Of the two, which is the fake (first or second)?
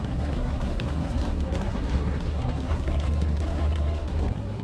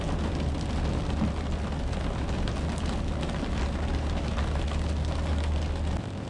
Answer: first